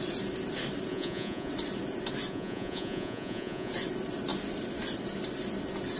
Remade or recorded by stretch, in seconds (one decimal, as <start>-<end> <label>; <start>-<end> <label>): 0.0-0.9 recorded; 0.9-1.5 remade; 1.5-2.3 recorded; 2.3-3.7 remade; 3.7-6.0 recorded